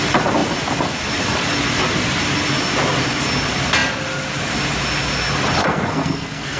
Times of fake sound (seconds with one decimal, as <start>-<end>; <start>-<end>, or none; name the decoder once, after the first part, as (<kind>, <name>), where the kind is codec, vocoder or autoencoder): 5.6-6.6 (codec, SNAC)